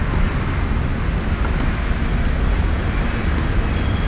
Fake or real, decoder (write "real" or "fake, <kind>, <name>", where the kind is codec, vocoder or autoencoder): real